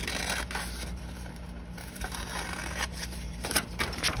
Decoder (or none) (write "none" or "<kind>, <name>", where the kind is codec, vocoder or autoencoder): vocoder, BigVGAN v2